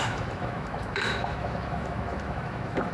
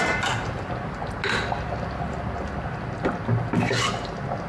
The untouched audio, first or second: second